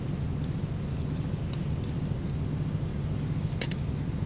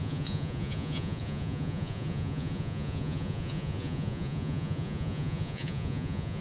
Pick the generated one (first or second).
second